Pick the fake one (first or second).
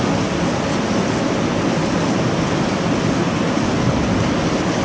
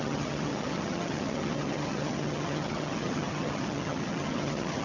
second